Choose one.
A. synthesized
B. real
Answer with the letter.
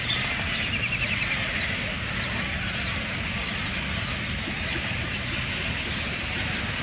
B